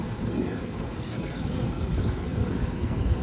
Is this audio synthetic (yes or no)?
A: yes